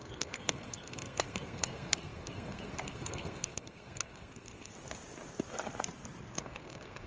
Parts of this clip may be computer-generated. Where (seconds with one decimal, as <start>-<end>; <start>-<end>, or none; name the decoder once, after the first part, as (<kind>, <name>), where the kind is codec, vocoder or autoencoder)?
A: 0.0-4.7 (codec, SNAC); 6.4-7.1